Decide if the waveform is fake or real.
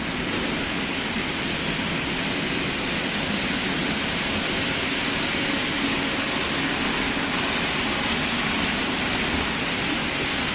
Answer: real